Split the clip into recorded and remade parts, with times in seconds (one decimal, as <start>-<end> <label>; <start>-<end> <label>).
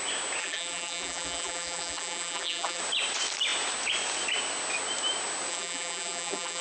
0.0-0.4 recorded; 0.4-2.8 remade; 2.8-5.5 recorded; 5.5-6.6 remade